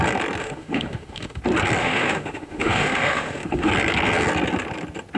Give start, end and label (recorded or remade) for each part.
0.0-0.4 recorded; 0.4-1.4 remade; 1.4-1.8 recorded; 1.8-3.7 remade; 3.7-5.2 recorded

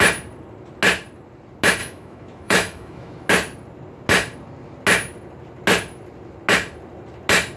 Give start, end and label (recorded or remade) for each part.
0.0-1.8 recorded; 1.8-3.3 remade; 3.3-7.6 recorded